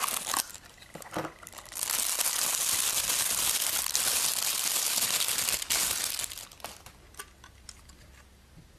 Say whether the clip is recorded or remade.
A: recorded